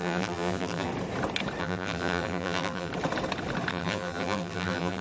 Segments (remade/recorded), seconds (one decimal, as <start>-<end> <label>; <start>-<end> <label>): 0.0-0.9 remade; 0.9-1.6 recorded; 1.6-2.9 remade; 2.9-3.7 recorded; 3.7-5.0 remade